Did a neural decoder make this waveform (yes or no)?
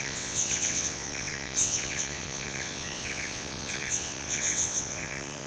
yes